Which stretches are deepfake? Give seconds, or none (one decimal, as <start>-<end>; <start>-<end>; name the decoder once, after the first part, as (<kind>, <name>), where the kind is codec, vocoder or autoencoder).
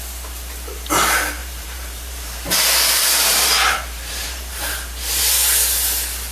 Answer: 1.4-5.2 (vocoder, BigVGAN v2)